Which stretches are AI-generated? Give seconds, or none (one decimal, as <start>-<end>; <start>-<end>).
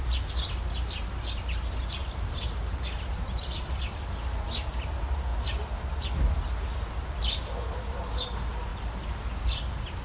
2.0-3.2